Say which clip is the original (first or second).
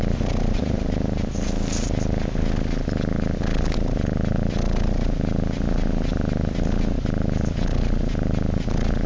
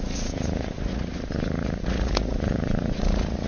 first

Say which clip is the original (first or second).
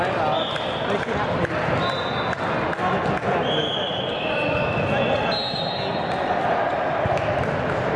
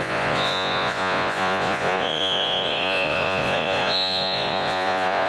first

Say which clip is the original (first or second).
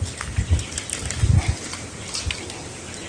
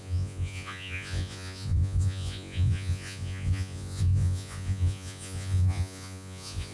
first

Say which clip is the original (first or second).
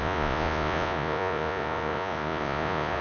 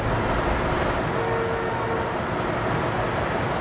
second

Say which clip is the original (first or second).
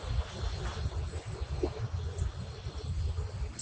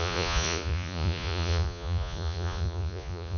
first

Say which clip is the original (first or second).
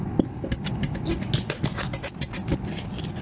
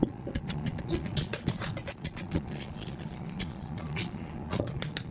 first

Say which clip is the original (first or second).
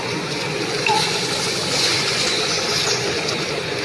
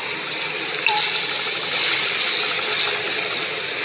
second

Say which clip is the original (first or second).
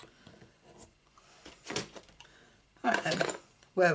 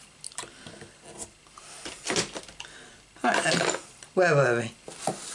second